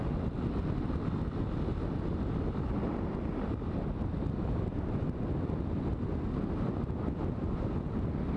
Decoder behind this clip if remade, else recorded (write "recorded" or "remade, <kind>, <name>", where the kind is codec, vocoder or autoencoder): recorded